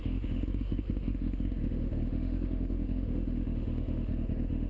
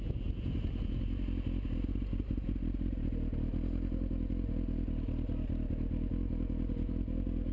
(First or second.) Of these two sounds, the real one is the second